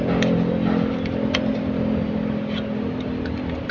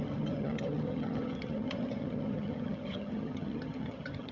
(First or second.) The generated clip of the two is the second